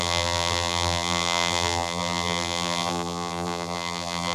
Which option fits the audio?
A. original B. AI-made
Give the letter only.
B